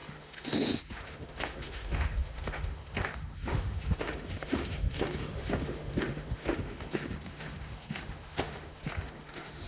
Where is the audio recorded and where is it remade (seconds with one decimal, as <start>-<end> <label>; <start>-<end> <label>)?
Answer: 0.0-9.7 remade